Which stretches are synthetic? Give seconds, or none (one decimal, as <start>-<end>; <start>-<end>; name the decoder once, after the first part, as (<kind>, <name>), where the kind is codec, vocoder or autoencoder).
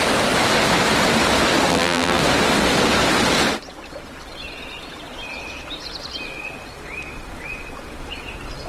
1.7-2.2 (vocoder, BigVGAN v2)